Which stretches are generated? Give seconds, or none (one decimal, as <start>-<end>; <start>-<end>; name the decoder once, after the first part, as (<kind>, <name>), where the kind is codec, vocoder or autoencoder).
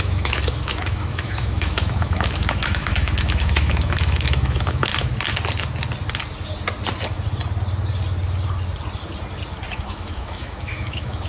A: 0.0-4.9 (autoencoder, DAC-VAE); 9.7-11.3